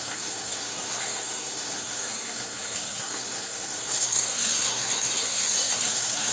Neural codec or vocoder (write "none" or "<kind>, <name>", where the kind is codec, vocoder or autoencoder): codec, SNAC